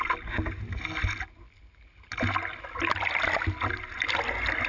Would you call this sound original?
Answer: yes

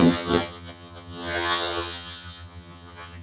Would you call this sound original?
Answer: no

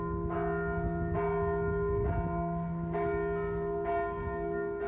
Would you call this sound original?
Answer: yes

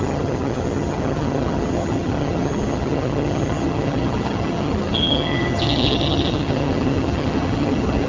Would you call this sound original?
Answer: no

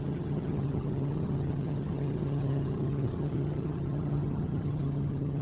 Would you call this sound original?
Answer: no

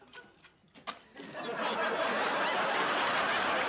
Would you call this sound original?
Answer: yes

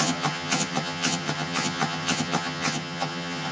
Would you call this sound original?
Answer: no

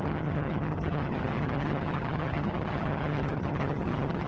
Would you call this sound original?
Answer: no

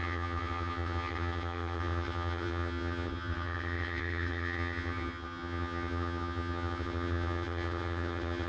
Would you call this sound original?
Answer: no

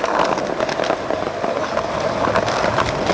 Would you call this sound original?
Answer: yes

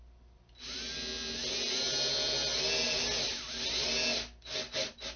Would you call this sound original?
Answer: yes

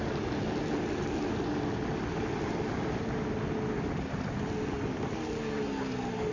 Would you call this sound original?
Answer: yes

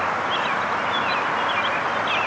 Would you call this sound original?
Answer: yes